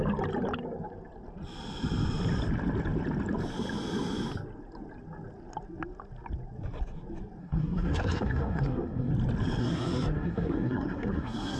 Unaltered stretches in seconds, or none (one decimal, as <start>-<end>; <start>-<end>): 0.0-7.4; 9.1-9.6